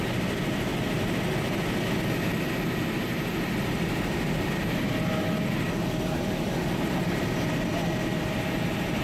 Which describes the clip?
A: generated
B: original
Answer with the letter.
B